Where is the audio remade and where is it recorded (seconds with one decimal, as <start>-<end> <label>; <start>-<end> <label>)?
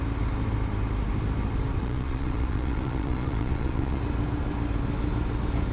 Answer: 0.0-1.8 recorded; 1.8-4.0 remade; 4.0-5.7 recorded